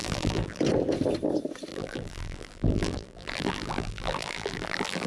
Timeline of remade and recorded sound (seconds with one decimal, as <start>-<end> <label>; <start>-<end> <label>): 0.0-0.6 remade; 0.6-1.7 recorded; 1.7-5.1 remade